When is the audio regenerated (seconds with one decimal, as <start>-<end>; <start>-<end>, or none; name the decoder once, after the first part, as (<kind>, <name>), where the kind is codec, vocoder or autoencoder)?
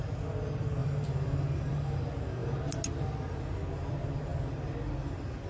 0.8-2.0 (vocoder, BigVGAN v2)